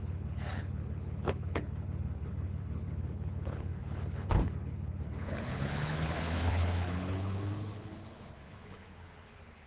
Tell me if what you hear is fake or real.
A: fake